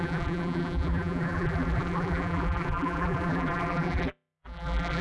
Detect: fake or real fake